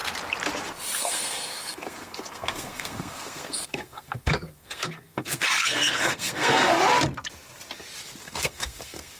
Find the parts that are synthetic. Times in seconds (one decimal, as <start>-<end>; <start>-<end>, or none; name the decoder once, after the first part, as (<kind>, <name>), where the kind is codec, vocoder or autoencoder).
1.0-6.7 (codec, SNAC); 8.2-9.2

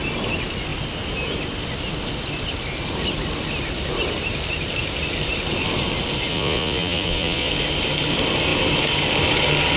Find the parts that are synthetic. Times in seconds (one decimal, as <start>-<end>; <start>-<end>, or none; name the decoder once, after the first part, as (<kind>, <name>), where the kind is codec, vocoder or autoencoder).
6.3-7.5 (vocoder, Vocos)

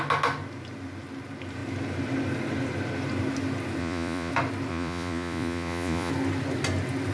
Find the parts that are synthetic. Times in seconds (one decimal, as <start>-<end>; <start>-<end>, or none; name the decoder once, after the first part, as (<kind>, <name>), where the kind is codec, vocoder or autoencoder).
3.8-4.3 (vocoder, Vocos); 4.7-6.1

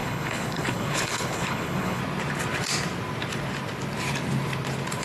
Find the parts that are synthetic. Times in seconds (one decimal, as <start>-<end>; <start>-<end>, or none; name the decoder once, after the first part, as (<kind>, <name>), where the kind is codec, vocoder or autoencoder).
0.0-2.0 (codec, HILCodec)

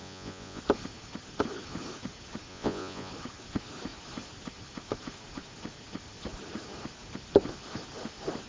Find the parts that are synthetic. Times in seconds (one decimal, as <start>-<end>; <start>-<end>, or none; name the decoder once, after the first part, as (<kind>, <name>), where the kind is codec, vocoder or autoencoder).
0.0-0.6 (vocoder, Vocos); 2.5-3.1